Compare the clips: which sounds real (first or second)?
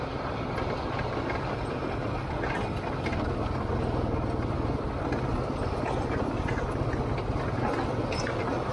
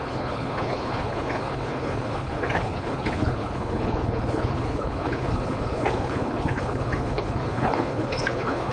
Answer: first